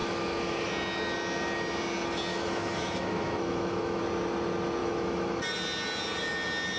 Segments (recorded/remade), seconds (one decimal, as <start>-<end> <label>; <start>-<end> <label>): 0.0-0.7 remade; 0.7-2.3 recorded; 2.3-4.0 remade; 4.0-4.8 recorded; 4.8-5.4 remade; 5.4-6.8 recorded